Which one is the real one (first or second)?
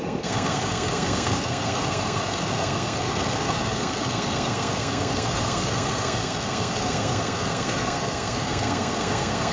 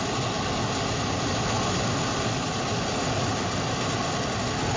second